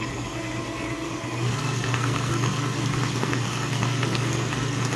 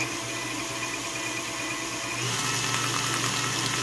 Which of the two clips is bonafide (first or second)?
second